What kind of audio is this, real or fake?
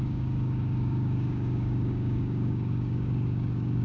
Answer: fake